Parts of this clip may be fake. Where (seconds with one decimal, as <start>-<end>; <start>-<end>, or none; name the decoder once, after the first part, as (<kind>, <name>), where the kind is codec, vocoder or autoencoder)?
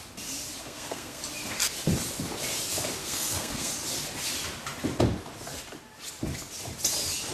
0.6-1.2 (codec, SNAC); 3.0-3.7